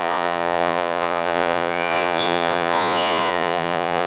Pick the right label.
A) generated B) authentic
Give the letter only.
A